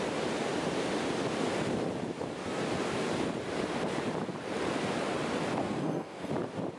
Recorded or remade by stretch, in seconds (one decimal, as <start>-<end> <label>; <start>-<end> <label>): 0.0-5.6 recorded; 5.6-6.3 remade; 6.3-6.8 recorded